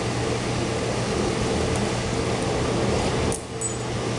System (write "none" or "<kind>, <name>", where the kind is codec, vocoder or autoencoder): none